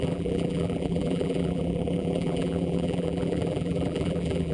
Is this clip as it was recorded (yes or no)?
no